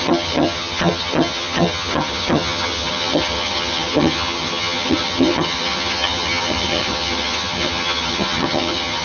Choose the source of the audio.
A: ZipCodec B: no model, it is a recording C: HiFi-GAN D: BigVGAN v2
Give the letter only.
C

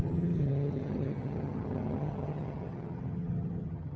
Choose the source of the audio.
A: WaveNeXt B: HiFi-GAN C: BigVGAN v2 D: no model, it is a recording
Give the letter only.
B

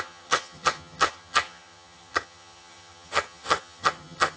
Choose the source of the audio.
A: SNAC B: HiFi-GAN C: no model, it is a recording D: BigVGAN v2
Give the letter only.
B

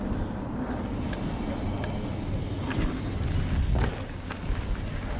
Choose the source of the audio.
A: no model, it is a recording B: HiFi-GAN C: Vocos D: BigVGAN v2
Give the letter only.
A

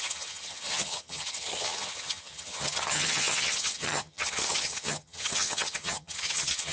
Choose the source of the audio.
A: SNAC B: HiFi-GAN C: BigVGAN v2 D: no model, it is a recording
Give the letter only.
B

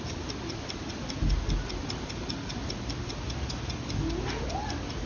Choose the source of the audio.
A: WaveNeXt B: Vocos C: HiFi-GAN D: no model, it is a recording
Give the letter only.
D